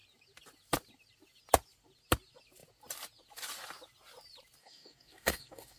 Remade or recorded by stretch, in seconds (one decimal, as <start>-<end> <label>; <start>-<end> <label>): 0.0-4.6 recorded; 4.6-5.8 remade